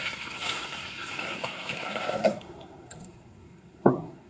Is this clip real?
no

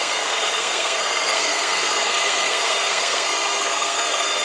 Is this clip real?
no